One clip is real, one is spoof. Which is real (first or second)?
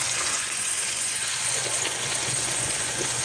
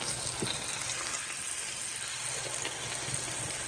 second